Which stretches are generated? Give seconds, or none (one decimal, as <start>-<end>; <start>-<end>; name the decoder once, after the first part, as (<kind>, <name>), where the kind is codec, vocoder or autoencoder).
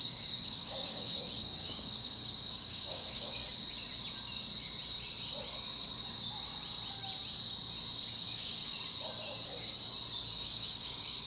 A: 0.0-3.4 (codec, DAC); 8.2-8.6; 10.4-11.3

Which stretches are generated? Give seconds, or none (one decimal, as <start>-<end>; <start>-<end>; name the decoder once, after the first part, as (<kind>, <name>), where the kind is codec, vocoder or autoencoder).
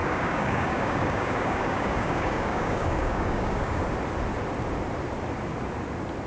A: 0.0-3.8 (codec, DAC)